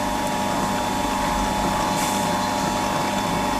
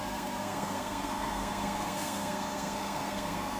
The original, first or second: first